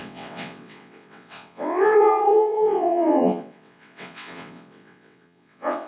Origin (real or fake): fake